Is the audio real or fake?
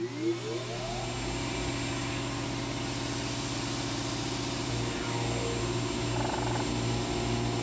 real